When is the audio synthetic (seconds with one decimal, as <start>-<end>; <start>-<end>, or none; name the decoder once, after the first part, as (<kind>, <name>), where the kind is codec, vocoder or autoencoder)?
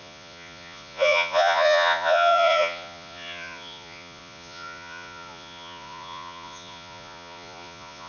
0.0-8.1 (vocoder, Vocos)